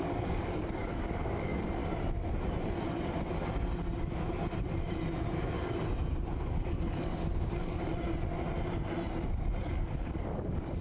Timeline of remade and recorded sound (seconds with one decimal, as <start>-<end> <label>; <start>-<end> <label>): 0.0-1.8 remade; 1.8-6.5 recorded; 6.5-7.9 remade; 7.9-9.6 recorded; 9.6-10.8 remade